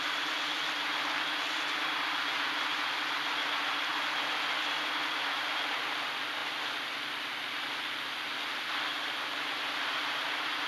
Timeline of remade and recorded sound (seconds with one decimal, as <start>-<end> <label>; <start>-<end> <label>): 0.0-10.7 recorded

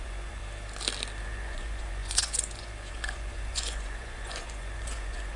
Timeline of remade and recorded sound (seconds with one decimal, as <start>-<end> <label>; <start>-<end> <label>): 0.0-0.4 remade; 0.4-1.2 recorded; 1.2-5.4 remade

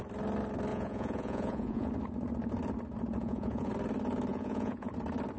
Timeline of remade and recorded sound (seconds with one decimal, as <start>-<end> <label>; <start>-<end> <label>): 0.0-0.7 recorded; 0.7-1.9 remade; 1.9-3.2 recorded; 3.2-3.7 remade; 3.7-4.3 recorded; 4.3-4.9 remade; 4.9-5.4 recorded

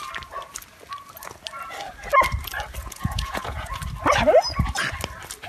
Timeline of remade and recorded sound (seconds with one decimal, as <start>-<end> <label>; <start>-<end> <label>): 0.0-2.8 recorded; 2.8-3.7 remade; 3.7-5.5 recorded

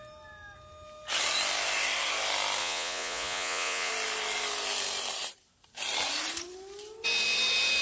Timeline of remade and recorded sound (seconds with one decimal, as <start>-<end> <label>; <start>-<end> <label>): 0.0-2.6 recorded; 2.6-3.9 remade; 3.9-7.8 recorded